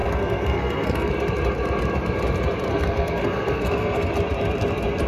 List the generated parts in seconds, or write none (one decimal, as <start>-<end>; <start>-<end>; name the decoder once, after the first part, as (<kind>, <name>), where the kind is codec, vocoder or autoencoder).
0.0-1.1 (codec, SNAC); 2.7-4.1